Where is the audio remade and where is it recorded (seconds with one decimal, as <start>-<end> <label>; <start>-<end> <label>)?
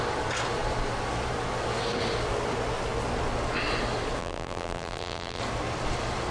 0.0-4.2 recorded; 4.2-5.4 remade; 5.4-6.3 recorded